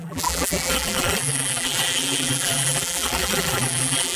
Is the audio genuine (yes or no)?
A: no